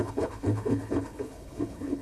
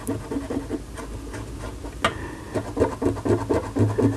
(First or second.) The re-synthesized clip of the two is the first